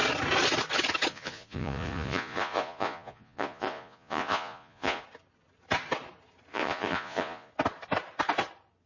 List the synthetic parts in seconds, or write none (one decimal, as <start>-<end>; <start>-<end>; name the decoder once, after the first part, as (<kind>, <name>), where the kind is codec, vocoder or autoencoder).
1.1-5.0 (vocoder, Vocos); 6.5-7.5